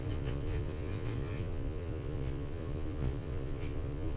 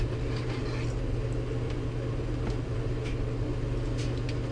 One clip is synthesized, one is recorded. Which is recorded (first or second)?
second